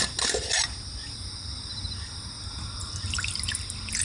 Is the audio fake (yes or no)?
no